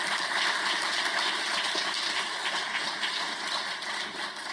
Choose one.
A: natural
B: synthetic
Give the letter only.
A